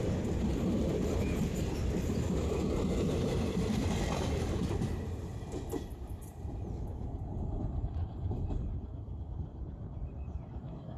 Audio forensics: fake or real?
fake